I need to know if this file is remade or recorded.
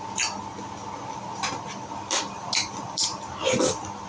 recorded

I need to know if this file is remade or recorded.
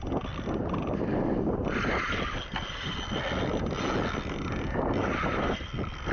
recorded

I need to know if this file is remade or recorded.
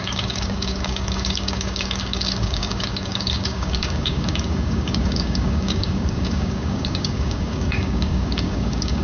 remade